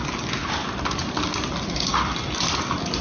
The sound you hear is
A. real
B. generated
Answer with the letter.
A